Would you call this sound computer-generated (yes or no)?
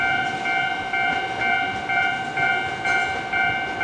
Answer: no